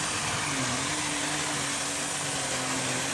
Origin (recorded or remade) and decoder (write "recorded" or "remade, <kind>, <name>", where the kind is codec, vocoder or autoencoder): recorded